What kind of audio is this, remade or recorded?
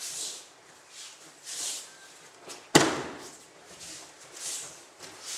recorded